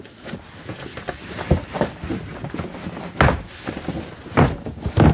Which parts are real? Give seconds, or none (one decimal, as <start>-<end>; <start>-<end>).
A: 0.0-5.1